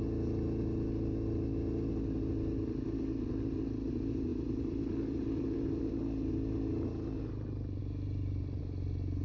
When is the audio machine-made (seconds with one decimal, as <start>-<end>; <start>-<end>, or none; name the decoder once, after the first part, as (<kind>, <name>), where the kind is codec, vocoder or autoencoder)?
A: 4.3-5.8 (vocoder, BigVGAN v2)